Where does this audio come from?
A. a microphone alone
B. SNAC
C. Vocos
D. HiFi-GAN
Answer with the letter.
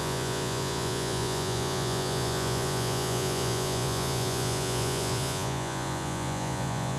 C